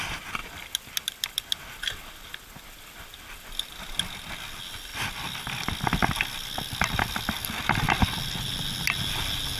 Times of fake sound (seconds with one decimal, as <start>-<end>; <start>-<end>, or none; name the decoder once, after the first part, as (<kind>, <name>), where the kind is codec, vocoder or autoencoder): 0.4-3.8 (vocoder, BigVGAN v2); 4.9-5.5; 6.0-8.3